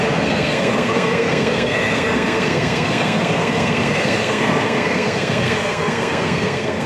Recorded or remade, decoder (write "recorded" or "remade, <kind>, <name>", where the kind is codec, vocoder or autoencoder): remade, codec, SNAC